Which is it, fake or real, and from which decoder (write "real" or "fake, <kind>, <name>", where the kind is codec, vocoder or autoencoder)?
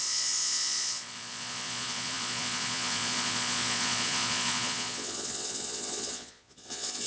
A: fake, vocoder, Vocos